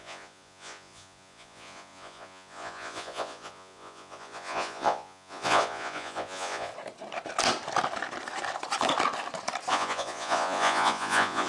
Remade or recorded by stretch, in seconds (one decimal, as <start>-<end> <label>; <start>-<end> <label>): 0.0-6.7 remade; 6.7-9.7 recorded; 9.7-11.5 remade